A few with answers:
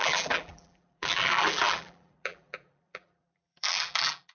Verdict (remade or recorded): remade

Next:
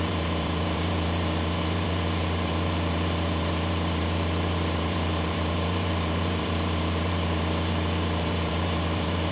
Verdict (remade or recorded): remade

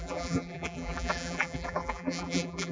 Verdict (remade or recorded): remade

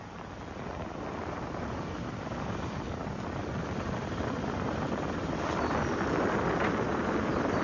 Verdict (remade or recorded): recorded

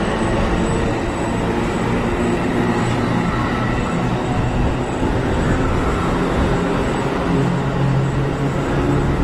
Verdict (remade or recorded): recorded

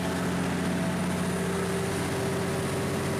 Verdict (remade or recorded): recorded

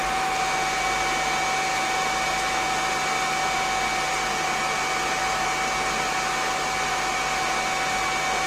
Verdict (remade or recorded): recorded